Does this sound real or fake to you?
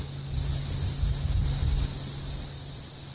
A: fake